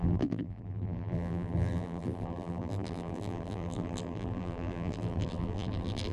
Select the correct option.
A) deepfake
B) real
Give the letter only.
A